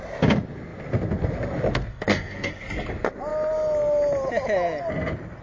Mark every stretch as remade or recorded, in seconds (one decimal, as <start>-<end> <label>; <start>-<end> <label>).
0.0-1.9 recorded; 1.9-2.5 remade; 2.5-5.4 recorded